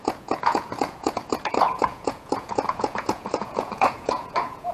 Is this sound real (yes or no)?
no